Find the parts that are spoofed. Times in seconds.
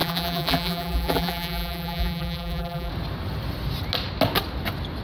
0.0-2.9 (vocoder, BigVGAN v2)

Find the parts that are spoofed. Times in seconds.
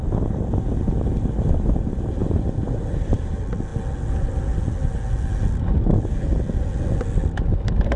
none